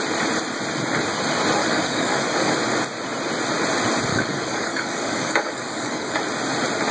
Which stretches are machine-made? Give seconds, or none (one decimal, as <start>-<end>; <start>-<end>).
1.6-2.5; 4.1-6.2